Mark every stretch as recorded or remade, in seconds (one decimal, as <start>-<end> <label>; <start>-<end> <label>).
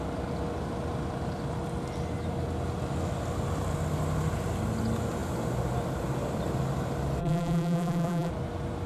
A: 0.0-7.2 recorded; 7.2-8.3 remade; 8.3-8.9 recorded